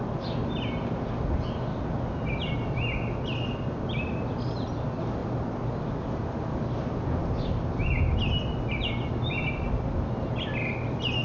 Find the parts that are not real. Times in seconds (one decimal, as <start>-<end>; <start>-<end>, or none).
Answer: none